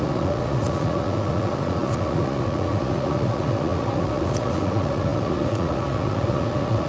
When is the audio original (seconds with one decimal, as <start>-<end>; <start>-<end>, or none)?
none